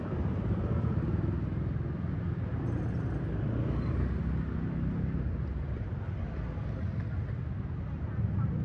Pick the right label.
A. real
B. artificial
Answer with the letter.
A